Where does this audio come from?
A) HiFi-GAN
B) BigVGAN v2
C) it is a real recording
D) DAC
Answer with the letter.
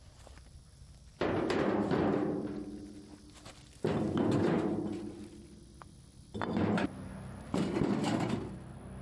C